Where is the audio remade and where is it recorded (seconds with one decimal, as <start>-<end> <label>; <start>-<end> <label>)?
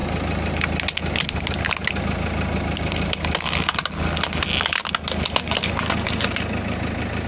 0.0-7.3 recorded